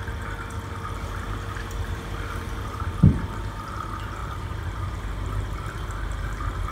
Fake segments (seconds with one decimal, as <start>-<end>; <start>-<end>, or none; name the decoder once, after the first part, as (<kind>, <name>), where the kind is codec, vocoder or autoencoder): 4.2-5.0 (vocoder, BigVGAN v2)